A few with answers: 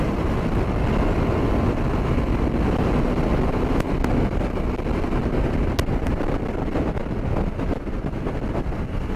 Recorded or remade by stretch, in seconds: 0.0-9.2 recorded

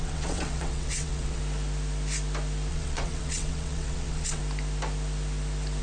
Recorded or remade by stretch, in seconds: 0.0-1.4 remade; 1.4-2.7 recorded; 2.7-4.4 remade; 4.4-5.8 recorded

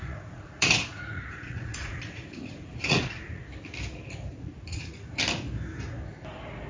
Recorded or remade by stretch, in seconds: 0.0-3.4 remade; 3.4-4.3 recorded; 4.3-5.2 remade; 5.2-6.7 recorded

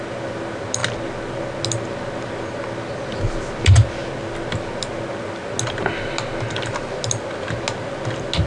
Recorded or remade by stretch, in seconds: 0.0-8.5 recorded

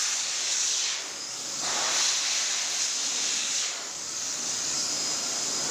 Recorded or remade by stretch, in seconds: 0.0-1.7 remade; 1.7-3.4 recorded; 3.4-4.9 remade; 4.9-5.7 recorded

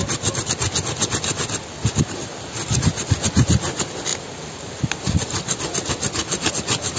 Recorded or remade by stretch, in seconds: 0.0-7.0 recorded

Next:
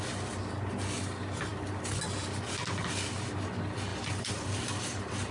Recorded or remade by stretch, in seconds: 0.0-3.9 recorded; 3.9-5.3 remade

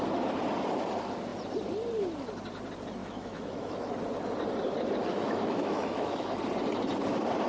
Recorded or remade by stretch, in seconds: 0.0-3.0 recorded; 3.0-3.9 remade; 3.9-5.1 recorded; 5.1-6.4 remade; 6.4-7.5 recorded